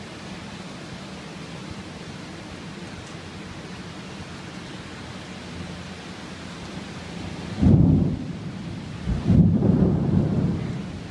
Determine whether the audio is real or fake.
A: real